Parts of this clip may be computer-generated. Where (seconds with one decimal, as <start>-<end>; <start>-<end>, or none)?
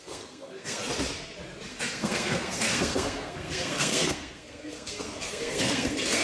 0.0-0.8; 1.7-6.2